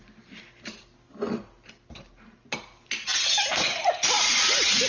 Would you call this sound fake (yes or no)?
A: no